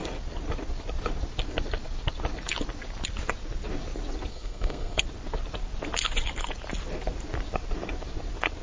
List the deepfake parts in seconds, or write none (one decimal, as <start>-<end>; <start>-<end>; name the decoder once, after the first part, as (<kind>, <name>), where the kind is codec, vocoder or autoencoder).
4.3-5.0 (codec, SNAC)